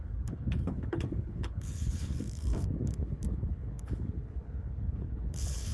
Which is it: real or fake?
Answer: fake